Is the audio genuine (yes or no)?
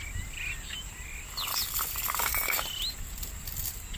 yes